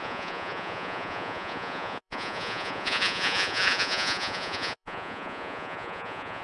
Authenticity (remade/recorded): remade